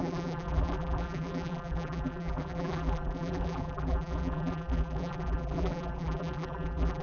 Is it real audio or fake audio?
fake